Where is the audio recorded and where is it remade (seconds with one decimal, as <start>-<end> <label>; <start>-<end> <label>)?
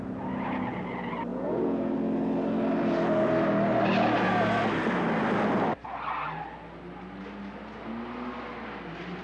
0.0-1.3 recorded; 1.3-1.9 remade; 1.9-9.2 recorded